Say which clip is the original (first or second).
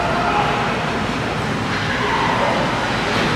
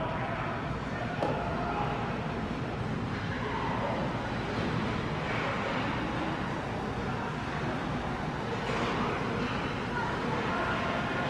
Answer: first